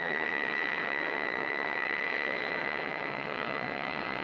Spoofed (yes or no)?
yes